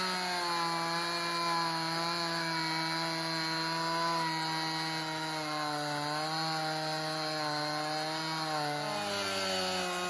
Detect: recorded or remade recorded